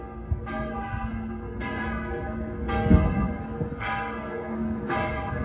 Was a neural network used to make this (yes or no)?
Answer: yes